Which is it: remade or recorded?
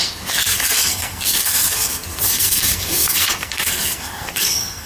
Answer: remade